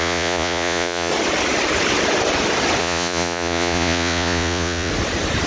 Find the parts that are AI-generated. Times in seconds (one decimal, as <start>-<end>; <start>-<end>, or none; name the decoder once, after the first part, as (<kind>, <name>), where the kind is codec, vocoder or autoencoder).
0.0-1.1 (vocoder, Vocos); 2.8-4.9